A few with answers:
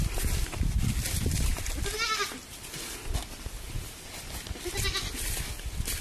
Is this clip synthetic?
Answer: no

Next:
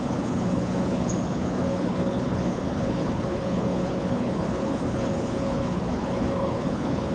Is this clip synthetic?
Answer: yes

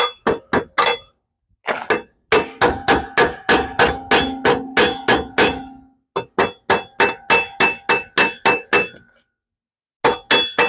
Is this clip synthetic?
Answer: no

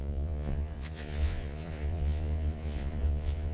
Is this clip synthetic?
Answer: yes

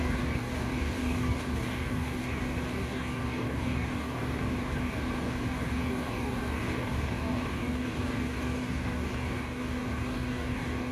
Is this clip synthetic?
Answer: yes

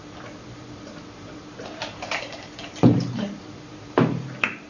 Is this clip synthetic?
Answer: yes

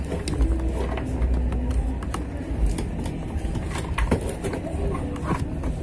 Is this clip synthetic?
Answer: no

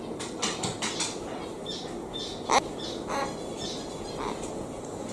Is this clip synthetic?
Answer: no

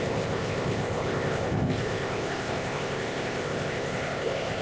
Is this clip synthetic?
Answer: yes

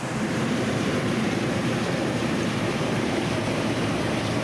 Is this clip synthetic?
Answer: yes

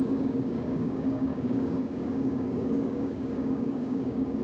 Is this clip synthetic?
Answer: yes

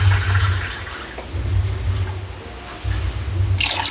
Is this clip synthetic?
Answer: no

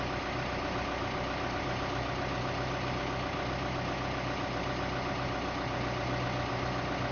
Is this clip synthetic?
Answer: no